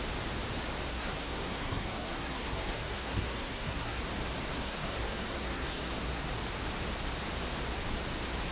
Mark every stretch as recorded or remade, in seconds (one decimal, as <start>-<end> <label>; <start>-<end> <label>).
0.0-0.9 recorded; 0.9-4.0 remade; 4.0-4.5 recorded; 4.5-6.3 remade; 6.3-8.5 recorded